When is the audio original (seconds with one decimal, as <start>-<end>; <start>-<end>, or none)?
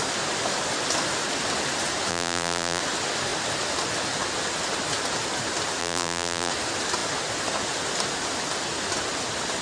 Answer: 0.0-2.1; 2.8-5.8; 6.5-9.6